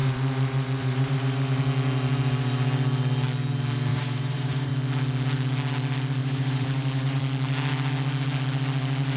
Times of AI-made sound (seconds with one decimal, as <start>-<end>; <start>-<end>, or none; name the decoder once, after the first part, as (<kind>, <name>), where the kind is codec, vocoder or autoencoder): 0.0-1.6 (vocoder, BigVGAN v2); 3.9-4.7; 6.2-7.2